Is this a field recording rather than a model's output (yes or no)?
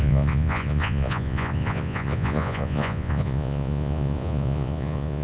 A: no